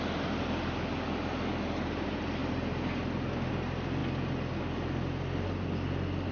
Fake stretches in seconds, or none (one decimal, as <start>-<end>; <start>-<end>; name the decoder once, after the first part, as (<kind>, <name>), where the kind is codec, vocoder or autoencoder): none